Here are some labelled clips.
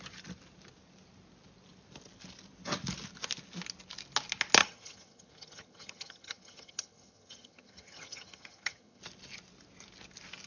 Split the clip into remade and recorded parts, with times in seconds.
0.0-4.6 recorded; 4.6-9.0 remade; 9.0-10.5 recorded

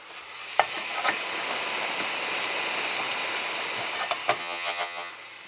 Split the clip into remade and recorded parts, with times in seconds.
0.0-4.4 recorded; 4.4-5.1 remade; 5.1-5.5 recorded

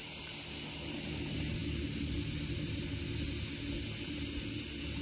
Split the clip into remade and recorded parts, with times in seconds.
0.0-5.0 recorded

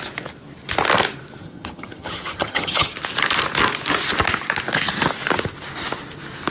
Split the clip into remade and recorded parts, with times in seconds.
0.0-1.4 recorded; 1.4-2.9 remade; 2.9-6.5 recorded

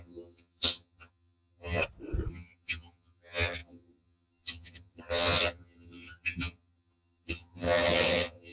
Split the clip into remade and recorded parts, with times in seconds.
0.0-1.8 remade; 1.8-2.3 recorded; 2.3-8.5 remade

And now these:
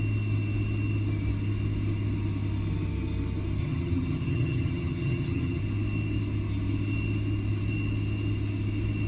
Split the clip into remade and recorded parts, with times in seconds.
0.0-3.6 recorded; 3.6-5.6 remade; 5.6-9.1 recorded

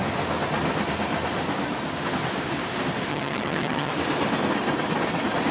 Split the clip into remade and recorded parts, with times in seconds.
0.0-3.1 recorded; 3.1-3.9 remade; 3.9-5.5 recorded

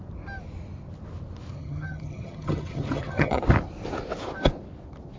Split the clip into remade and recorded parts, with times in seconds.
0.0-1.6 recorded; 1.6-3.4 remade; 3.4-5.2 recorded